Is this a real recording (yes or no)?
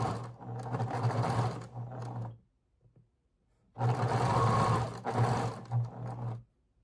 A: yes